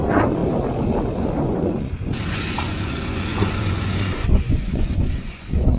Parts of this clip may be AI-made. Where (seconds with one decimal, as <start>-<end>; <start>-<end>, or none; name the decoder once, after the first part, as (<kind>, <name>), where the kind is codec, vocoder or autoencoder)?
0.0-0.4 (vocoder, Vocos); 1.4-5.8